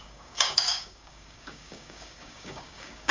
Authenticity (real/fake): fake